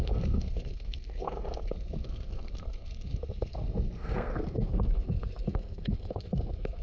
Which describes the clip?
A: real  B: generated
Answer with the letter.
B